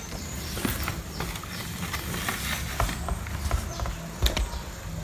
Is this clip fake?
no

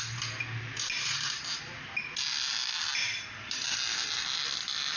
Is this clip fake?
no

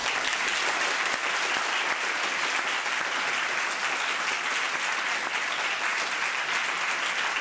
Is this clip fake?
no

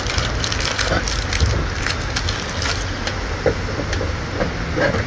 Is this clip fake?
no